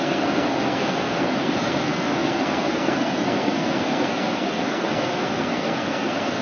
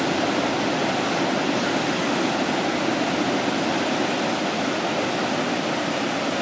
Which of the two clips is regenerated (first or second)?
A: first